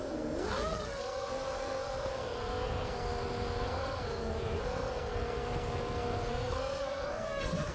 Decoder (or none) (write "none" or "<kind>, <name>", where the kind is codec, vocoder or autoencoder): codec, SNAC